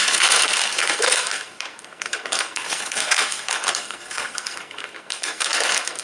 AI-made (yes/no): yes